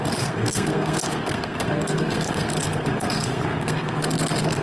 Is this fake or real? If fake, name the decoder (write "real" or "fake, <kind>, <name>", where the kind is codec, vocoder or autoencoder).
fake, codec, SNAC